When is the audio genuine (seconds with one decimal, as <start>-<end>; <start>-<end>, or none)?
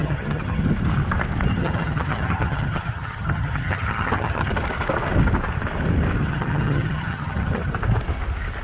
0.7-1.5; 4.5-6.2; 7.7-8.6